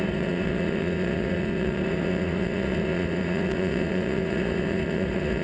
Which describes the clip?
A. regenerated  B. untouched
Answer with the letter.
A